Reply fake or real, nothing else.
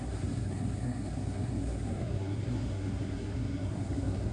fake